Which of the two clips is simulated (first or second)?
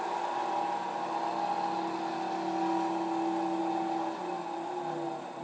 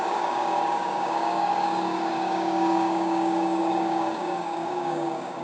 second